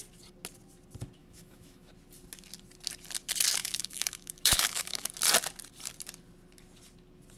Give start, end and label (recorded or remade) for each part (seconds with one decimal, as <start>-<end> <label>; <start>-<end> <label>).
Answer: 0.0-1.2 recorded; 1.2-1.9 remade; 1.9-3.6 recorded; 3.6-5.1 remade; 5.1-7.4 recorded